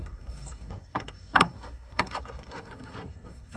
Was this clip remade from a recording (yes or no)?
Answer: yes